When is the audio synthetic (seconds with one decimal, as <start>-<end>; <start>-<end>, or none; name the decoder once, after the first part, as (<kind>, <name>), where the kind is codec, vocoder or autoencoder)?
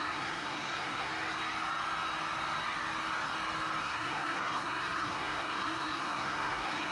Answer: 0.0-1.1 (codec, SNAC); 3.8-6.9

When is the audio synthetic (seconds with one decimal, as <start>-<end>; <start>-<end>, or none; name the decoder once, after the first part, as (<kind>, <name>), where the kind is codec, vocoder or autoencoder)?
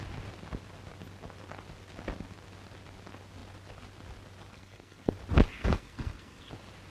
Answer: 4.5-5.1 (codec, SNAC); 5.5-6.5